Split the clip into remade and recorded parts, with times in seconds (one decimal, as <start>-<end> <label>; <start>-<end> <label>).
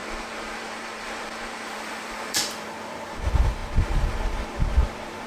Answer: 0.0-3.2 remade; 3.2-5.3 recorded